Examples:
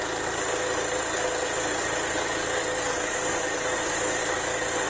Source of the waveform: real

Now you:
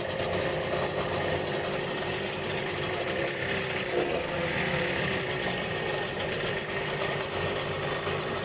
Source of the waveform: real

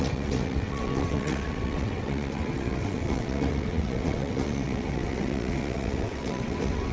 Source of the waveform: fake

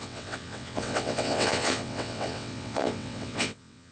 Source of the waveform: fake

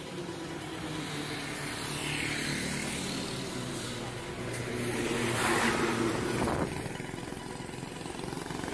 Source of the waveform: real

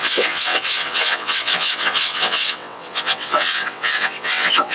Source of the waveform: fake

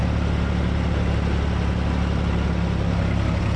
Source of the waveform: real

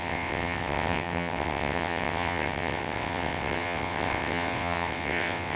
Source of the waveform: fake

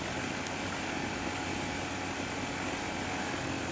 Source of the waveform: real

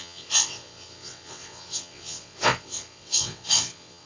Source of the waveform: fake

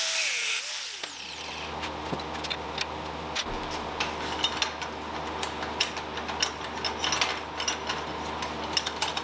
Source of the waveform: real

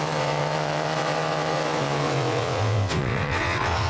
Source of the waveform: fake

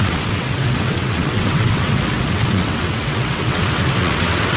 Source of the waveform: fake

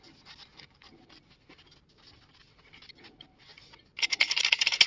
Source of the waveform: real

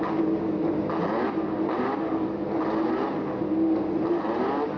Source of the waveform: real